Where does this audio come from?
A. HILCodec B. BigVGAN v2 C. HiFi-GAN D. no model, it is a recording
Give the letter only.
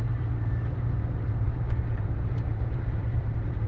B